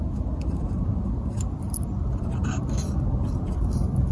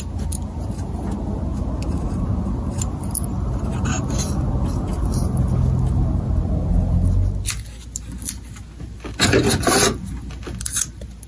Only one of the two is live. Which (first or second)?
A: second